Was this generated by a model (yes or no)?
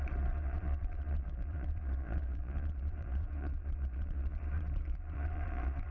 yes